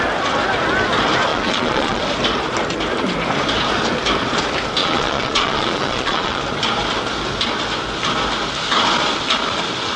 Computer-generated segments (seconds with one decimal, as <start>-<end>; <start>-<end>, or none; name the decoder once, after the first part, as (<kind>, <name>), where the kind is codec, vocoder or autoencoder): 1.3-2.0 (vocoder, Vocos); 4.8-6.4